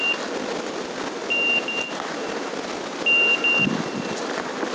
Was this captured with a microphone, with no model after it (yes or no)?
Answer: yes